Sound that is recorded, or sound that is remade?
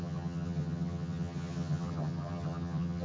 remade